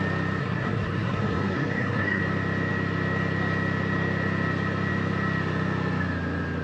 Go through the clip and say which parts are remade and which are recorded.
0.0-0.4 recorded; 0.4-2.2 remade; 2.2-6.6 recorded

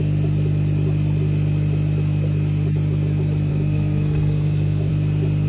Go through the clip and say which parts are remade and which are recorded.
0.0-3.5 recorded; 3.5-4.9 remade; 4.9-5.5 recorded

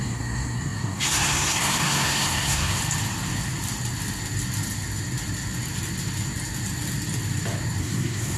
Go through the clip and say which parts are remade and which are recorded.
0.0-2.8 remade; 2.8-7.8 recorded; 7.8-8.4 remade

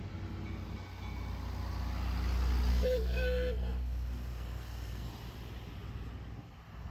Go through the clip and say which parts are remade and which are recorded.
0.0-2.7 recorded; 2.7-5.1 remade; 5.1-6.9 recorded

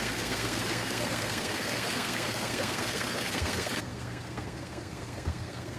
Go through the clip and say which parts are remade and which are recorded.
0.0-5.8 remade

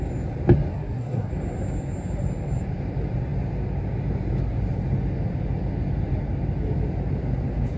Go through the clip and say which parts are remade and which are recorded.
0.0-0.7 recorded; 0.7-1.3 remade; 1.3-7.8 recorded

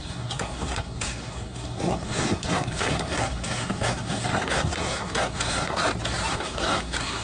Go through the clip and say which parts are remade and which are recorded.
0.0-5.8 remade; 5.8-6.3 recorded; 6.3-7.2 remade